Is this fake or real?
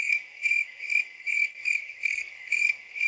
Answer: fake